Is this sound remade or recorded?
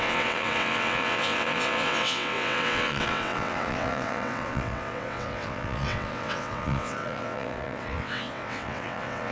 remade